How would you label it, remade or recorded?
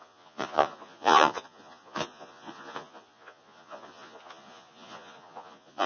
remade